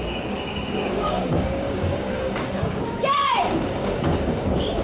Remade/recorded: remade